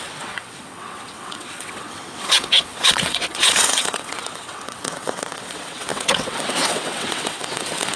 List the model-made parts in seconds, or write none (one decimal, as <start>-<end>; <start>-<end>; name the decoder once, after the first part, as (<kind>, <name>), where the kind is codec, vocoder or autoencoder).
0.0-8.0 (vocoder, WaveNeXt)